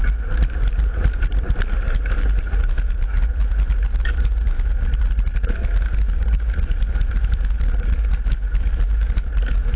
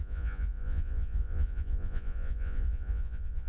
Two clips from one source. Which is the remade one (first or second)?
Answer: second